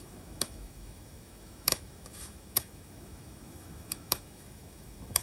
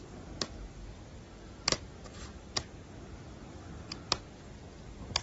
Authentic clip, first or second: second